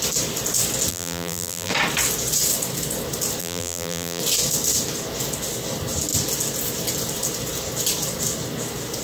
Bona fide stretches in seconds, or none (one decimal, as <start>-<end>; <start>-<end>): 0.0-0.9; 1.7-3.4; 4.2-9.0

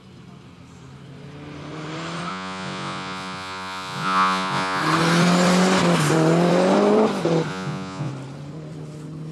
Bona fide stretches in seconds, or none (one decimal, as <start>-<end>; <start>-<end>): 0.0-2.3; 4.8-7.5; 8.1-9.3

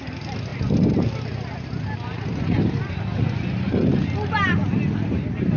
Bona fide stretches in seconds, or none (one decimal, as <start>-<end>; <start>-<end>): 0.0-5.6

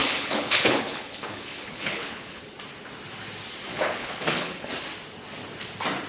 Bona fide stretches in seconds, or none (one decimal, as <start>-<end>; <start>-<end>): 2.4-3.7; 4.7-6.1

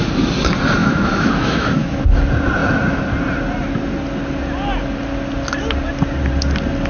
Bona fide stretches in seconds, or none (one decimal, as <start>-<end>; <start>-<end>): 0.0-0.8; 2.0-6.9

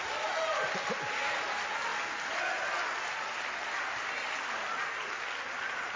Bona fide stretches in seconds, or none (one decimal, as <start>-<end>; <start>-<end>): 0.0-6.0

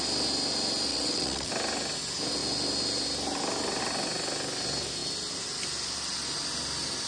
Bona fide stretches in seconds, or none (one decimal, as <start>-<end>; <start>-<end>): 0.0-0.9; 1.5-7.1

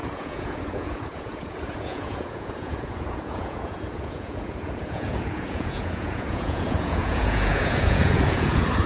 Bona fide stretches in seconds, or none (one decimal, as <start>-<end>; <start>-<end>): none